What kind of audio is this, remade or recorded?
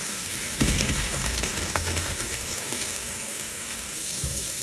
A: remade